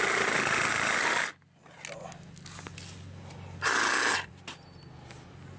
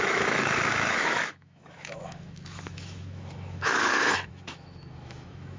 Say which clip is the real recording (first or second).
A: first